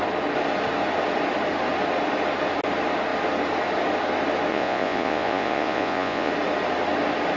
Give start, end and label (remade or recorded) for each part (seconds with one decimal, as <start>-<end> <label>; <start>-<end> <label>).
0.0-4.5 recorded; 4.5-6.3 remade; 6.3-7.4 recorded